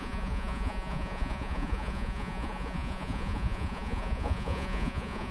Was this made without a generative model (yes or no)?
no